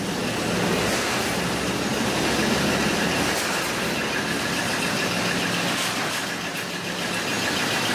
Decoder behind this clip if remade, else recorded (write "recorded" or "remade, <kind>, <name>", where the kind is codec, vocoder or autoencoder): recorded